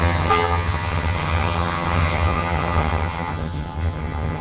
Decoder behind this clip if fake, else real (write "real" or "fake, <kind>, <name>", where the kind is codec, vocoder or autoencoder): fake, vocoder, HiFi-GAN